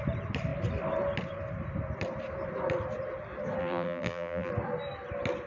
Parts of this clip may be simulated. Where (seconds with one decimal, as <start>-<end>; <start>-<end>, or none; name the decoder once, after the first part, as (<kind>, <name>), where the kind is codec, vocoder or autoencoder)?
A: 3.6-4.5 (vocoder, BigVGAN v2)